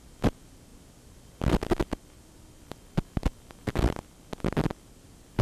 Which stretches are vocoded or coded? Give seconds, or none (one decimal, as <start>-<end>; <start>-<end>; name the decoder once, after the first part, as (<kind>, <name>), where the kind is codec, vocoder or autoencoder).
none